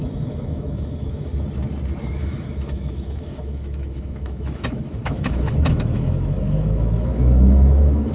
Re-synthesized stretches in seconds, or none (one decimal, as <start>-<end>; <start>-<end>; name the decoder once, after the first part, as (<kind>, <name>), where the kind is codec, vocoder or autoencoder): 0.0-1.3 (autoencoder, DAC-VAE); 2.2-8.1